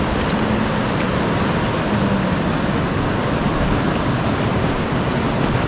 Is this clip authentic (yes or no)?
yes